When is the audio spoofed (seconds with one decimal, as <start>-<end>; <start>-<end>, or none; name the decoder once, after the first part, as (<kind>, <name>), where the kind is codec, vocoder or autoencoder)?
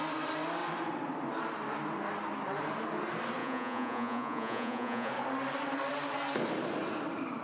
3.4-5.1 (vocoder, Vocos)